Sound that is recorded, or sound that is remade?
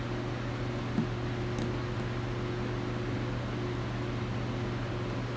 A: recorded